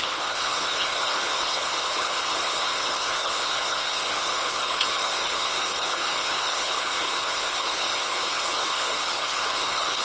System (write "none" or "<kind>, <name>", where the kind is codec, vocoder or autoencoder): codec, HILCodec